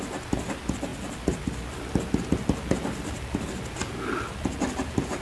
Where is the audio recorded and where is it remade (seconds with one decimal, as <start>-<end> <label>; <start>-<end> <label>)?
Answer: 0.0-5.2 recorded